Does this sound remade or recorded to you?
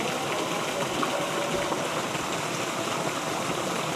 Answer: recorded